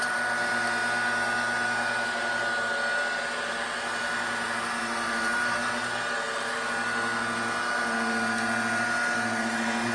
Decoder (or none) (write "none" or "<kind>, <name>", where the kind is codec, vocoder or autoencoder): none